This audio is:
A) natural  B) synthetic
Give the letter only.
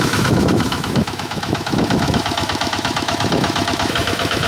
B